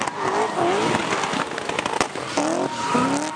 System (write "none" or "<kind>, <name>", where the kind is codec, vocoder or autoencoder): none